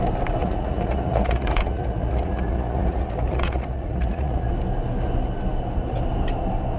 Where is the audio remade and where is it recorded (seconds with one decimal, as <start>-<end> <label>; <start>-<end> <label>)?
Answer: 0.0-0.4 recorded; 0.4-4.5 remade; 4.5-6.8 recorded